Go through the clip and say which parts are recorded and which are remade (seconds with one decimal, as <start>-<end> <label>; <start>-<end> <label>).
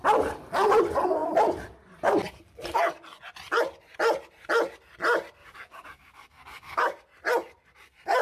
0.0-5.4 recorded; 5.4-6.8 remade; 6.8-8.2 recorded